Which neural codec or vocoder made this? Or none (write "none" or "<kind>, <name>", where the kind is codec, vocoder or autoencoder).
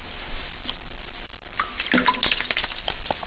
none